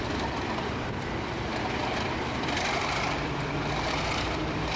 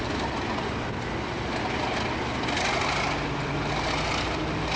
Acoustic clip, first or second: second